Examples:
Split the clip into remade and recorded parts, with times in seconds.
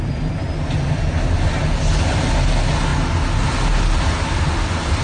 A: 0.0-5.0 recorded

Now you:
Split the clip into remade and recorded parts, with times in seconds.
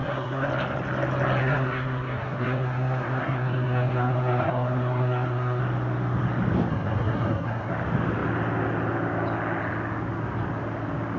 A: 0.0-0.5 remade; 0.5-1.4 recorded; 1.4-5.6 remade; 5.6-6.7 recorded; 6.7-7.7 remade; 7.7-11.2 recorded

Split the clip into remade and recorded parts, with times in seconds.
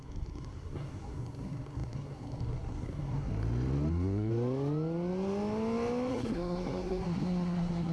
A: 0.0-3.3 remade; 3.3-3.9 recorded; 3.9-4.3 remade; 4.3-6.1 recorded; 6.1-7.9 remade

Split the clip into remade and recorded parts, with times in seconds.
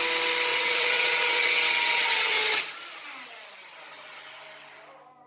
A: 0.0-0.5 recorded; 0.5-2.6 remade; 2.6-5.3 recorded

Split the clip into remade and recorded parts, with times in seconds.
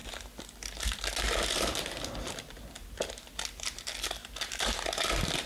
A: 0.0-5.5 recorded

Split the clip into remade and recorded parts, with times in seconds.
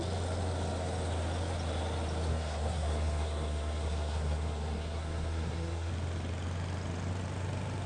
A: 0.0-2.3 recorded; 2.3-5.9 remade; 5.9-7.9 recorded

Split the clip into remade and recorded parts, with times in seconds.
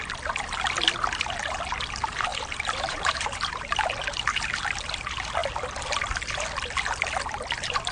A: 0.0-2.3 recorded; 2.3-3.7 remade; 3.7-7.9 recorded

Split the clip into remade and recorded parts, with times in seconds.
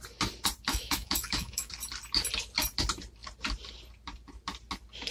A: 0.0-0.7 recorded; 0.7-1.7 remade; 1.7-5.1 recorded